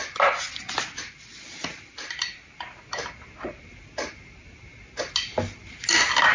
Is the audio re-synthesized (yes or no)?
no